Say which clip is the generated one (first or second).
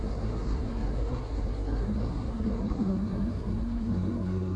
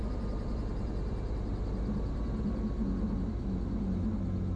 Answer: first